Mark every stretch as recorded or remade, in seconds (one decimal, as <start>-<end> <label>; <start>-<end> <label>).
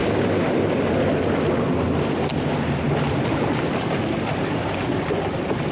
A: 0.0-5.7 recorded